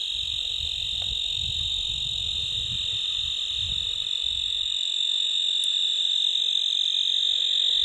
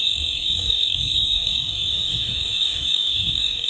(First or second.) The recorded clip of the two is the first